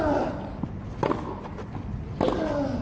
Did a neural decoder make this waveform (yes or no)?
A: no